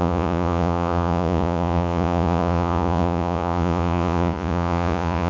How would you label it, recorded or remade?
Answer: remade